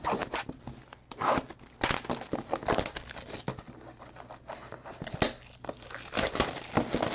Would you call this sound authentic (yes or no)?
yes